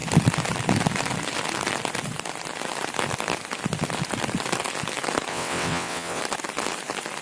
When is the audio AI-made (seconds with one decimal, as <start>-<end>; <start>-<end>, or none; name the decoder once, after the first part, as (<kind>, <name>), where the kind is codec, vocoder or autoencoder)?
5.3-6.2 (vocoder, WaveNeXt)